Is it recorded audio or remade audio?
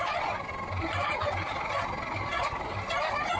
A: recorded